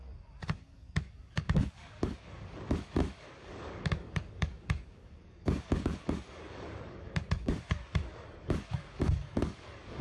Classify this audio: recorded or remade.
remade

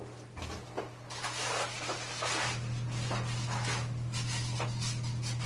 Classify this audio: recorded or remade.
recorded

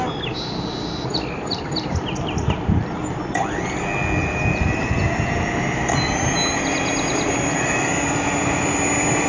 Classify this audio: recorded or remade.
recorded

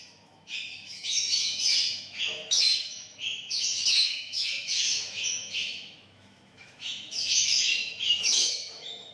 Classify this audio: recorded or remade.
remade